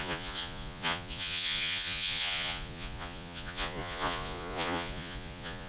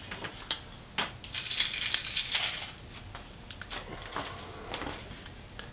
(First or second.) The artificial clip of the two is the first